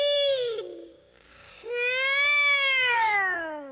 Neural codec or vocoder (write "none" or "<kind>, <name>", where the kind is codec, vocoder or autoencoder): codec, DAC